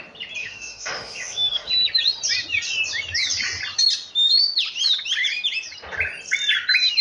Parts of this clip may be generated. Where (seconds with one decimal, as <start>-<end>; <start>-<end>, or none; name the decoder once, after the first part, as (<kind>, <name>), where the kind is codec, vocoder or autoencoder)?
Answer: 0.4-1.7 (autoencoder, DAC-VAE)